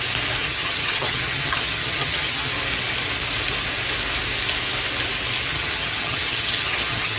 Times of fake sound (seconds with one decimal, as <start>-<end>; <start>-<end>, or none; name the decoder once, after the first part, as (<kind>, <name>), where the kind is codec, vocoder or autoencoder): 0.4-2.5 (vocoder, HiFi-GAN); 5.5-7.2

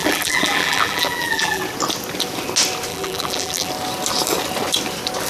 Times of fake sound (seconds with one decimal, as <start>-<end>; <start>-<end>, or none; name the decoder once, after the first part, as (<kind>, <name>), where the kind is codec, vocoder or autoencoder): 0.0-1.6 (vocoder, BigVGAN v2); 2.9-3.7

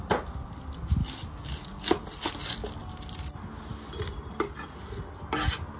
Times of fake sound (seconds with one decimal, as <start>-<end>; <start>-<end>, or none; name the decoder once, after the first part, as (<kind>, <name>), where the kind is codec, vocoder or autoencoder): none